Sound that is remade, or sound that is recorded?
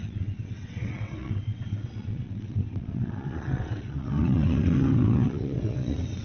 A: remade